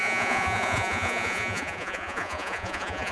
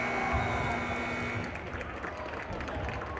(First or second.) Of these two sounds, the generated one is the first